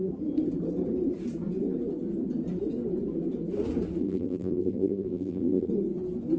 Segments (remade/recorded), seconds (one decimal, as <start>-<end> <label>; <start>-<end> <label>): 0.0-4.0 recorded; 4.0-5.7 remade; 5.7-6.4 recorded